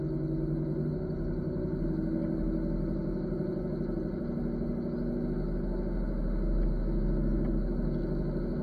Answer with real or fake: real